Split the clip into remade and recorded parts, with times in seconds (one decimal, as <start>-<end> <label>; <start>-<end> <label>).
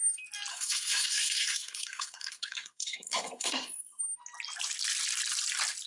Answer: 0.0-0.5 recorded; 0.5-4.0 remade; 4.0-5.9 recorded